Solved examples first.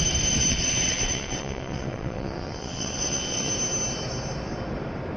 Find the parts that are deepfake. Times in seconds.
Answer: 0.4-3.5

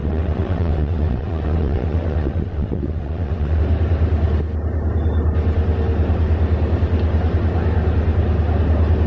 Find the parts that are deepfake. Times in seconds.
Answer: 0.0-3.6

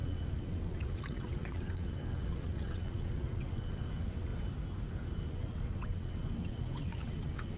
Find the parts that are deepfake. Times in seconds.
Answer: 0.0-4.3; 5.3-7.6